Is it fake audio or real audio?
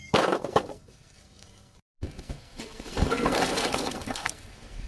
fake